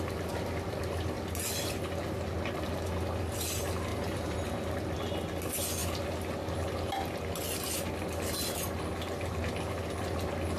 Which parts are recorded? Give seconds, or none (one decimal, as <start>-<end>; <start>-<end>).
0.0-3.9; 4.5-10.6